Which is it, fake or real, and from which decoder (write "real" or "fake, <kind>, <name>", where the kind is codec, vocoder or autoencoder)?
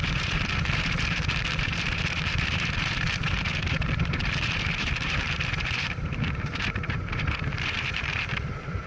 fake, vocoder, BigVGAN v2